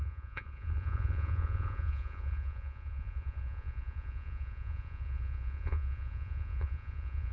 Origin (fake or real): fake